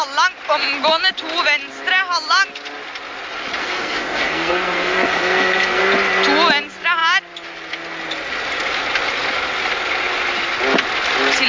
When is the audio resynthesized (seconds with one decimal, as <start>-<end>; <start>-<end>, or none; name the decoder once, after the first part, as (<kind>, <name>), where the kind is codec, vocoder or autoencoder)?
3.6-5.8 (codec, SNAC)